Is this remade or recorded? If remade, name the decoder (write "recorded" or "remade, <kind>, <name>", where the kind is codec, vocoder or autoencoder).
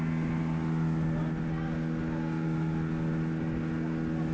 recorded